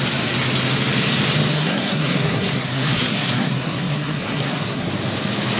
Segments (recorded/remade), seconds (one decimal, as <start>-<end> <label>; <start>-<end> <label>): 0.0-1.5 recorded; 1.5-4.9 remade; 4.9-5.6 recorded